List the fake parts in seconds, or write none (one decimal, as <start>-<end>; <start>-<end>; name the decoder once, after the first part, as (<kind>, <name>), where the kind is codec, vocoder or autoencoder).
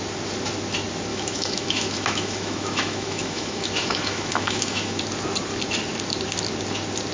1.1-5.0 (autoencoder, DAC-VAE)